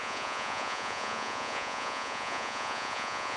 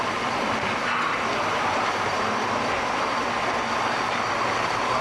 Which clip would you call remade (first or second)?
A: first